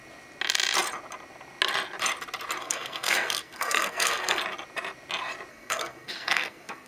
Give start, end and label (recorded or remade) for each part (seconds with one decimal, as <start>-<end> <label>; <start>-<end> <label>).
0.0-2.6 recorded; 2.6-4.4 remade; 4.4-5.5 recorded; 5.5-6.9 remade